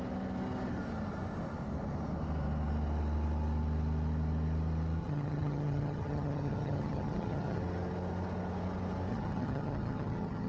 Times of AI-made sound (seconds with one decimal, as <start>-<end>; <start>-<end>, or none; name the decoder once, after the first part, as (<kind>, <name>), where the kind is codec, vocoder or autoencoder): 5.0-7.6 (vocoder, HiFi-GAN); 9.1-10.5